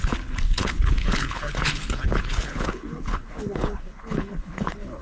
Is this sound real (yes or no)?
no